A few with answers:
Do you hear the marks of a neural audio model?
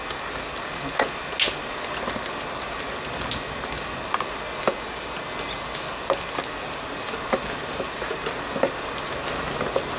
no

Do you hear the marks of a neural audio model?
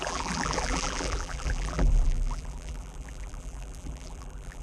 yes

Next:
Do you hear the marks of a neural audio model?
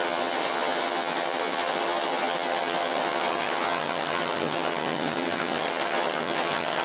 yes